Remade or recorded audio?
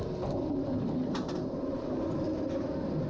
recorded